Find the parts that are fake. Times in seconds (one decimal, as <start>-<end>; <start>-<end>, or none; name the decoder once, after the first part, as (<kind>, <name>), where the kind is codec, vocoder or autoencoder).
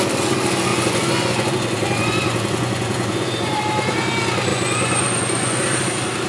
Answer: 0.7-3.6 (vocoder, Vocos); 4.5-5.6